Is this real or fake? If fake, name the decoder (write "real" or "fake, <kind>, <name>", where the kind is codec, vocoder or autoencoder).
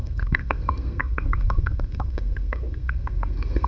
fake, codec, SNAC